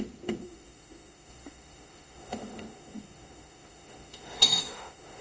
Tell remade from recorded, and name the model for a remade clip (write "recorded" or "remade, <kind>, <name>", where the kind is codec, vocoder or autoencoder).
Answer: remade, autoencoder, DAC-VAE